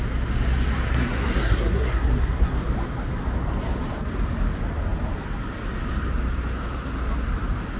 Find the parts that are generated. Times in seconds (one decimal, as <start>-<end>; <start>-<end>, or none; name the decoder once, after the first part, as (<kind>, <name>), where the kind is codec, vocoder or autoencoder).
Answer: 0.9-2.6 (codec, SNAC)